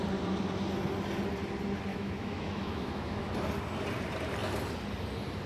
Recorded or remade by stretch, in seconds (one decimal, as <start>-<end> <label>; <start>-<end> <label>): 0.0-1.9 recorded; 1.9-3.3 remade; 3.3-5.5 recorded